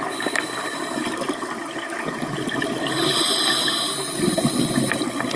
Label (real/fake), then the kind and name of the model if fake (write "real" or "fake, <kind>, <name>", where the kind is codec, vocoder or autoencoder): real